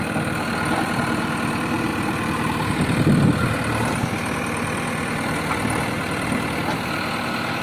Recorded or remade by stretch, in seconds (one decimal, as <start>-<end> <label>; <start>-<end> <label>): 0.0-7.6 recorded